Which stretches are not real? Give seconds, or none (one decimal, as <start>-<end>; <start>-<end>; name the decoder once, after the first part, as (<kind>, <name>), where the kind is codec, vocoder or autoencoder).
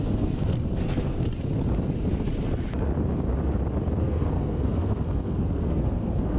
0.0-1.2 (codec, SNAC); 4.0-6.4